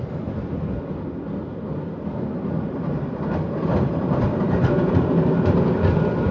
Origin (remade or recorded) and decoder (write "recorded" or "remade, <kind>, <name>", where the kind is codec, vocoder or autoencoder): recorded